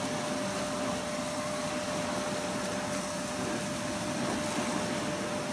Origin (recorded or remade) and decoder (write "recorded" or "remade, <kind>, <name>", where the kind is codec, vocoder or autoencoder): recorded